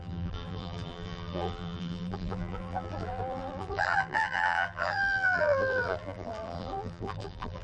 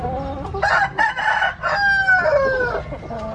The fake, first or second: first